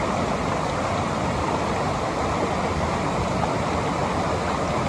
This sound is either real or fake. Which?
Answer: real